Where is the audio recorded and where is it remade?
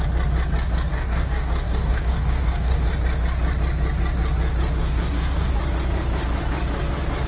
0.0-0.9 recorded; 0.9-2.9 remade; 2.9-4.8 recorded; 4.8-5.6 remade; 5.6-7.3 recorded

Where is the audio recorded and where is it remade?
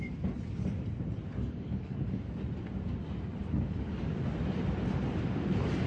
0.0-1.3 recorded; 1.3-2.4 remade; 2.4-3.4 recorded; 3.4-4.1 remade; 4.1-5.9 recorded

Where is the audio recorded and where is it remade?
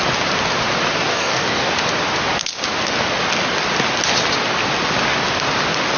0.0-1.1 recorded; 1.1-1.7 remade; 1.7-6.0 recorded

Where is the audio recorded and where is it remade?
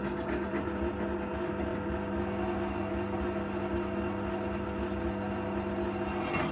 0.0-0.5 remade; 0.5-6.5 recorded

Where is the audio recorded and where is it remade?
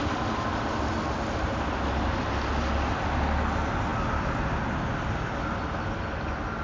0.0-6.6 recorded